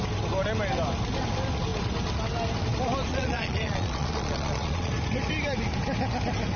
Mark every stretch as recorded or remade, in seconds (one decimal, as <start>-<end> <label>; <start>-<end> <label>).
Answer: 0.0-3.1 recorded; 3.1-4.9 remade; 4.9-6.6 recorded